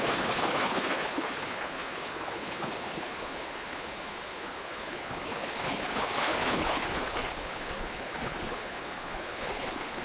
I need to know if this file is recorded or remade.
remade